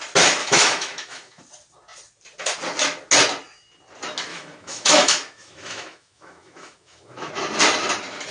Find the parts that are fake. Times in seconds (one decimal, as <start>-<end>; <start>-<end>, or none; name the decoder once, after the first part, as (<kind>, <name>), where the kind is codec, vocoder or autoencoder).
0.4-1.4 (autoencoder, DAC-VAE); 4.3-7.3